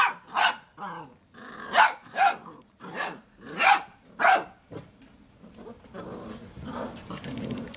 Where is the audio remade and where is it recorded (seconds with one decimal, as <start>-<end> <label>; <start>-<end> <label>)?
0.0-2.0 recorded; 2.0-4.9 remade; 4.9-7.8 recorded